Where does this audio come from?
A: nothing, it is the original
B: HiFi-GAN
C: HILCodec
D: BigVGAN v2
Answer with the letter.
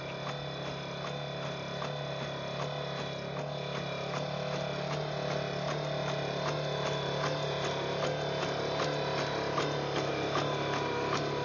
A